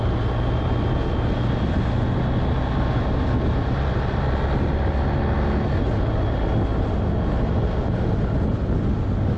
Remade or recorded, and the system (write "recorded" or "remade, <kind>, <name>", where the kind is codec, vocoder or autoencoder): recorded